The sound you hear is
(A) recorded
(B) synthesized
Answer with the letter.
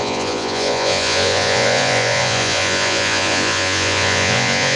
B